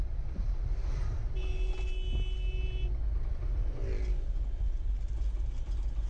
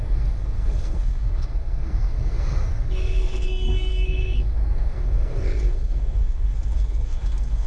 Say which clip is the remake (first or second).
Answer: second